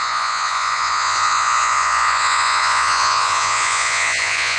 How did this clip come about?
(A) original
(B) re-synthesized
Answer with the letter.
B